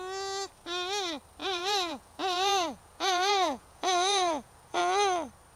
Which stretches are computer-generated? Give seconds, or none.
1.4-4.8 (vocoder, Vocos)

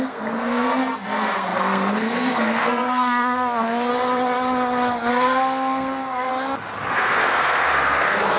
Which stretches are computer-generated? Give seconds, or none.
0.0-3.9 (codec, SNAC); 5.1-6.3; 6.9-8.4

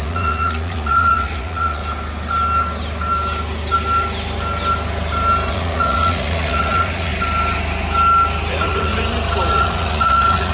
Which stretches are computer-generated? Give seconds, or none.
0.0-1.8 (vocoder, Vocos); 5.5-7.1; 8.5-8.9; 9.5-10.5

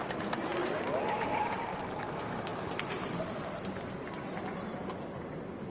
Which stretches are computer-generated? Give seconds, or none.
none